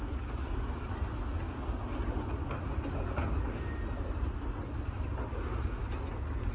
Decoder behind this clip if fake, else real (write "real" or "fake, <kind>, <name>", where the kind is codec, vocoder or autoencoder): real